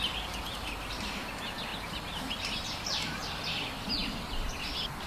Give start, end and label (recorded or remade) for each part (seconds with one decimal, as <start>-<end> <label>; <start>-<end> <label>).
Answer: 0.0-5.1 recorded